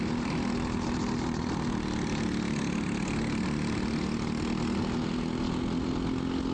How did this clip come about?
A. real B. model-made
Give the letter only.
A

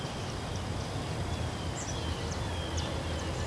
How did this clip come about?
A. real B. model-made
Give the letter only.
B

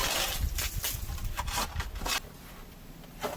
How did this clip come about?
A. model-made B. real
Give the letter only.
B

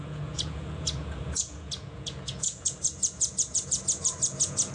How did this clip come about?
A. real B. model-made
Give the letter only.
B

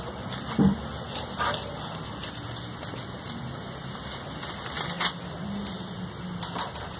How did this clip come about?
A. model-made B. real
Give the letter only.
B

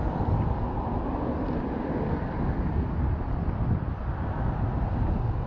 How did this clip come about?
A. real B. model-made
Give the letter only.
A